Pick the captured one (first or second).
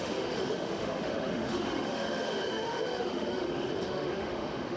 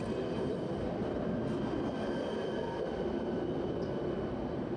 second